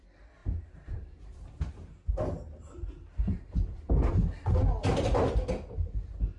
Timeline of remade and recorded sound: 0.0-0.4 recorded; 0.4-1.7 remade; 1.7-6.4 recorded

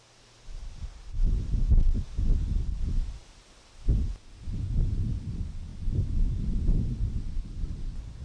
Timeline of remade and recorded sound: 0.0-8.2 recorded

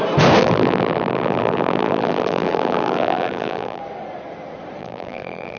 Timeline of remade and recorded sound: 0.0-0.4 recorded; 0.4-3.8 remade; 3.8-4.8 recorded; 4.8-5.6 remade

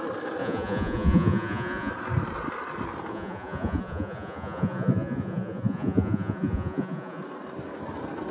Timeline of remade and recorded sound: 0.0-0.4 recorded; 0.4-1.9 remade; 1.9-3.1 recorded; 3.1-7.2 remade; 7.2-8.3 recorded